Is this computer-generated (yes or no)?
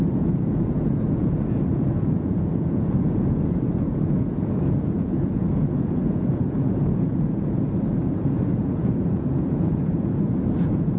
yes